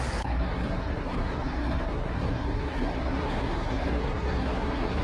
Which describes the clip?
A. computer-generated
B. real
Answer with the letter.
A